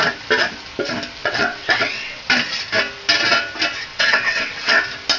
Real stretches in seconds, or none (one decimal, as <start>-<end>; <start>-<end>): 0.0-1.2; 2.2-3.9; 4.8-5.2